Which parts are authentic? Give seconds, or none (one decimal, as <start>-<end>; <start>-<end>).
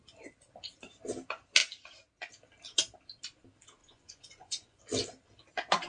0.0-3.8; 4.8-5.9